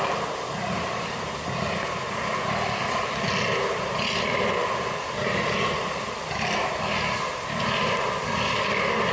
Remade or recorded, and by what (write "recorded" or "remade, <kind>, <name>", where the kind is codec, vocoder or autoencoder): recorded